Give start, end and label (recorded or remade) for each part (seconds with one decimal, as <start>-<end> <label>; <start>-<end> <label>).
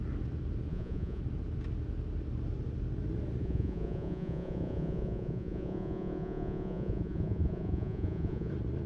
0.0-0.7 recorded; 0.7-1.2 remade; 1.2-3.4 recorded; 3.4-8.5 remade; 8.5-8.9 recorded